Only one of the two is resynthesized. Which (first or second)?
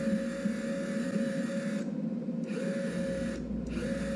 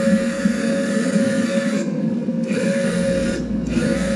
second